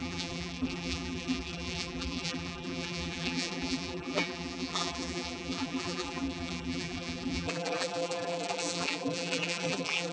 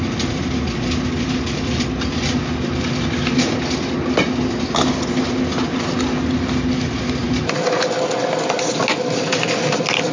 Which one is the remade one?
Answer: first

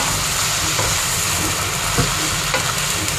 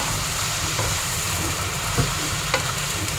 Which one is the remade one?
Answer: second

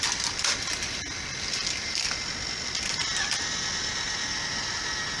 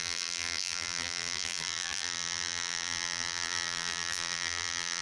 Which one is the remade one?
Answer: second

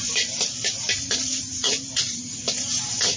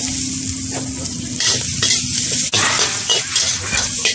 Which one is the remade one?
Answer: first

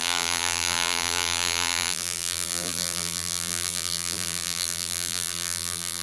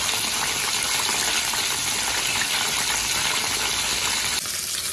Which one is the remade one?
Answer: first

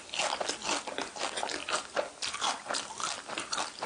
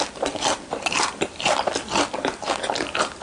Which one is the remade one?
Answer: second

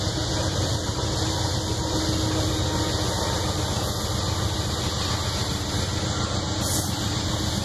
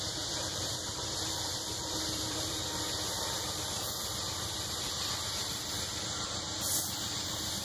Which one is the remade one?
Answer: second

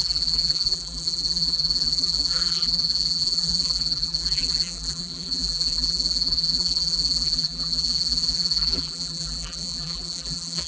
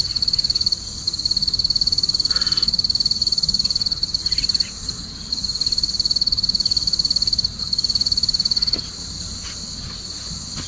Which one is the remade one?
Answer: first